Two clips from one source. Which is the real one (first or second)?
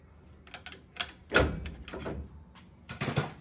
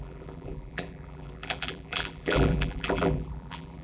first